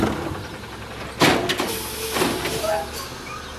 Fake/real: real